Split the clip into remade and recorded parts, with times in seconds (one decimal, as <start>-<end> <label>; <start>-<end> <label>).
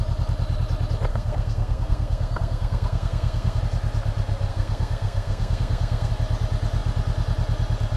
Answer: 0.0-1.1 recorded; 1.1-3.6 remade; 3.6-4.5 recorded; 4.5-6.1 remade; 6.1-8.0 recorded